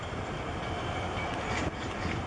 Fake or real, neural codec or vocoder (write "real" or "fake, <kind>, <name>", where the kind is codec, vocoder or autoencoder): real